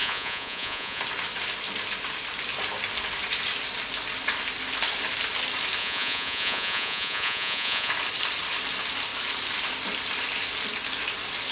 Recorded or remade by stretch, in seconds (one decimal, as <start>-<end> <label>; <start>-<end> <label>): 0.0-1.0 remade; 1.0-5.8 recorded; 5.8-7.9 remade; 7.9-11.5 recorded